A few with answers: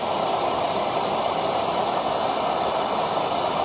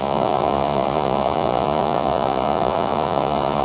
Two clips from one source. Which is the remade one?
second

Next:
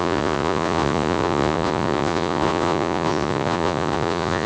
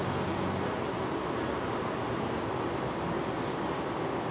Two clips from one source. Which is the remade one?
first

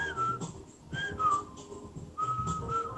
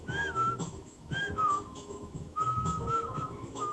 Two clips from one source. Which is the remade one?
second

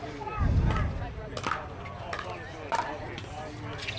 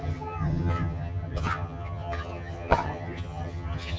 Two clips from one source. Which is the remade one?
second